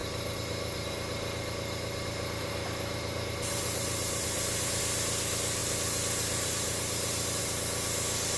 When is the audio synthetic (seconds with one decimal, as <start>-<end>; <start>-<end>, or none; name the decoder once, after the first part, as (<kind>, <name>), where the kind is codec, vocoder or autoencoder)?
0.0-4.8 (vocoder, BigVGAN v2); 5.6-7.4